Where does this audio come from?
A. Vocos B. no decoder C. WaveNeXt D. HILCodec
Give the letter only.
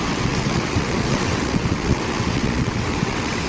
C